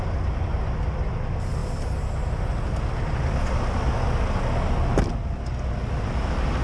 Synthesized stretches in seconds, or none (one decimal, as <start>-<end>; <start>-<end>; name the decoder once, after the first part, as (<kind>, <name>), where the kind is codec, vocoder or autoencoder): none